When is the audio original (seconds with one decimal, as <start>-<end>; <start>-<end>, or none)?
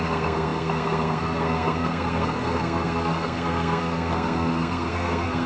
none